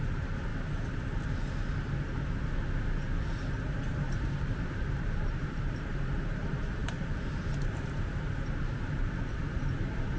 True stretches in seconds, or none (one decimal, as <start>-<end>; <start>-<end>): 0.5-3.5